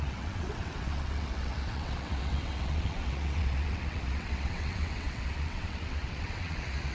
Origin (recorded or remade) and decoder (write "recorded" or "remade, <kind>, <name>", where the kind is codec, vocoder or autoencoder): remade, vocoder, WaveNeXt